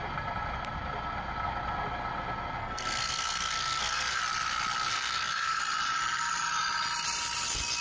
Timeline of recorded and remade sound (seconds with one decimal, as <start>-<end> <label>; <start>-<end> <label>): 0.0-2.6 recorded; 2.6-4.2 remade; 4.2-4.9 recorded; 4.9-5.6 remade; 5.6-7.8 recorded

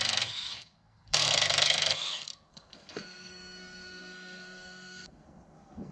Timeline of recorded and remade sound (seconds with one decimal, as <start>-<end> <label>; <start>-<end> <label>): 0.0-5.9 remade

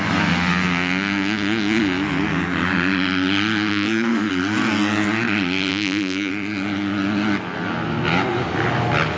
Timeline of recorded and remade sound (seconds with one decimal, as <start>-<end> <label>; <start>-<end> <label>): 0.0-3.7 recorded; 3.7-4.3 remade; 4.3-5.7 recorded; 5.7-6.3 remade; 6.3-9.2 recorded

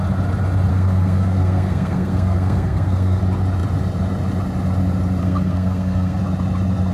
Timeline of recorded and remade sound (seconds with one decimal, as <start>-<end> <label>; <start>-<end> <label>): 0.0-0.7 recorded; 0.7-3.2 remade; 3.2-5.2 recorded; 5.2-6.2 remade; 6.2-6.9 recorded

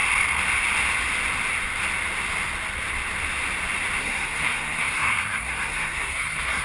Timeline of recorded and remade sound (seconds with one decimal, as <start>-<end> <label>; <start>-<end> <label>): 0.0-4.0 recorded; 4.0-6.6 remade

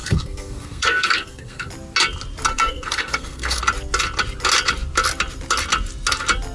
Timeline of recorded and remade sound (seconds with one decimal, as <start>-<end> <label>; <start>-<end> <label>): 0.0-1.7 remade; 1.7-2.5 recorded; 2.5-3.6 remade; 3.6-6.5 recorded

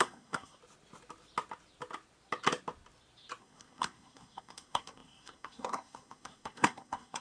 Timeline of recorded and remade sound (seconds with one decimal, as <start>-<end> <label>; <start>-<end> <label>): 0.0-0.6 remade; 0.6-3.4 recorded; 3.4-7.2 remade